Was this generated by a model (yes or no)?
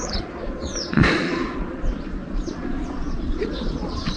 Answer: yes